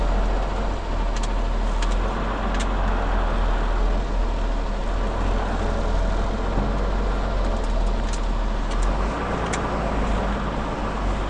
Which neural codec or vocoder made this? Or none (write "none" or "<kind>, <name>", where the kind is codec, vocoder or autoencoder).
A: none